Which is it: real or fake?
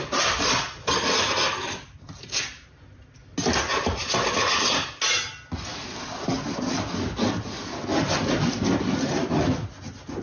real